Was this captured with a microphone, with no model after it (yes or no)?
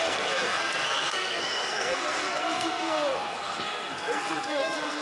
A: no